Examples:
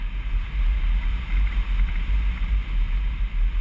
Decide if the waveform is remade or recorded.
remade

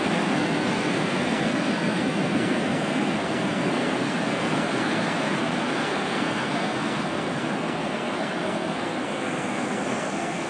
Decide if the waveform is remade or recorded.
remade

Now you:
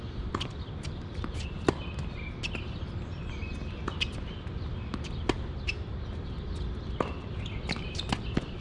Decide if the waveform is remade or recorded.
recorded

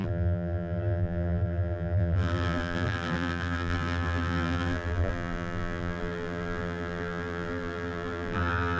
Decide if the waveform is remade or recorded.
remade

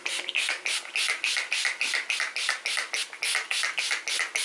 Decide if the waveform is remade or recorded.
recorded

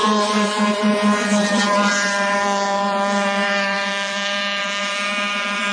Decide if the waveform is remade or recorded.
remade